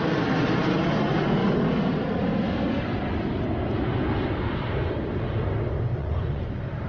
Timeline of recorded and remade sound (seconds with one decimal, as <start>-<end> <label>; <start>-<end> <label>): 0.0-5.9 recorded; 5.9-6.5 remade; 6.5-6.9 recorded